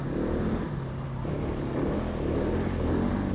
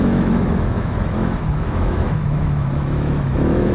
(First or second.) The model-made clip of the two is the second